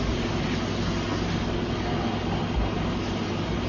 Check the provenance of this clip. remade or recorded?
recorded